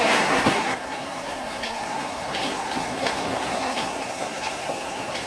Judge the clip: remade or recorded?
remade